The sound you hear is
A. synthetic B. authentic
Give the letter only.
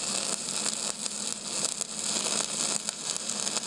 B